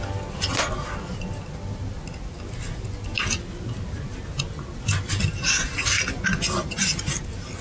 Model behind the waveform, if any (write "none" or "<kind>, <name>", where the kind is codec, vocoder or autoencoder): none